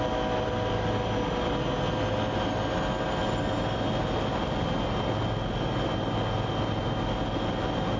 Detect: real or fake real